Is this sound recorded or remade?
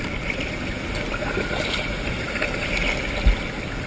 recorded